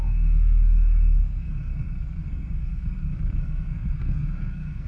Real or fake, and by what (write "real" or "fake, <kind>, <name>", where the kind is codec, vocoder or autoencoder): fake, codec, SNAC